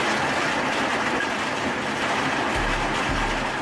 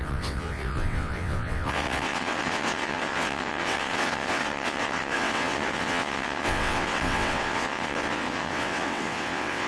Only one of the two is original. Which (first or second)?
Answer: first